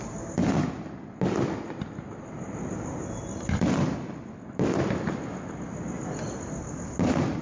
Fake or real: real